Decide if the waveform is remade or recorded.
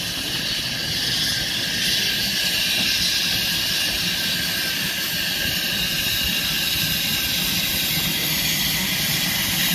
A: recorded